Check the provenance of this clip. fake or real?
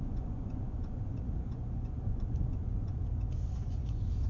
fake